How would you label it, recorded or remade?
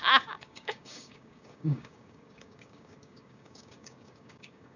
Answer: remade